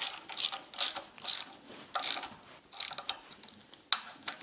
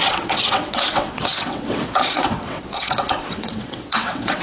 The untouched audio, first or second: first